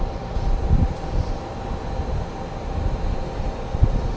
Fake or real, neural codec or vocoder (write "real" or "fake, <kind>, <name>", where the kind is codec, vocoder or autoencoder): real